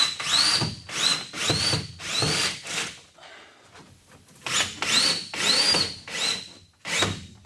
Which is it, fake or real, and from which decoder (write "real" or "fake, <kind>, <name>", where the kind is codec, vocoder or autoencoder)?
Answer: real